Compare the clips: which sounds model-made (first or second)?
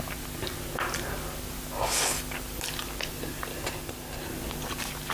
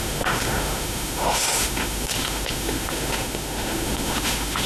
second